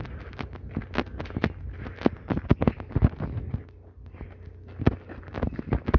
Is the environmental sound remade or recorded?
recorded